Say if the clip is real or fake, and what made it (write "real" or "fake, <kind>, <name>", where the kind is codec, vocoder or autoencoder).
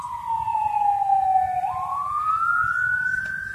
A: real